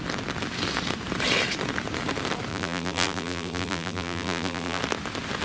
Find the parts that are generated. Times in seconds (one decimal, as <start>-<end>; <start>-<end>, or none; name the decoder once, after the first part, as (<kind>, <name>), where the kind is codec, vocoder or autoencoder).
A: 2.5-4.8 (vocoder, BigVGAN v2)